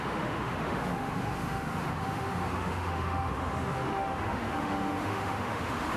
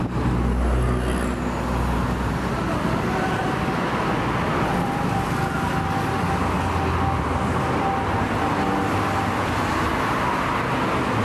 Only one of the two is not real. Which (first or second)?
first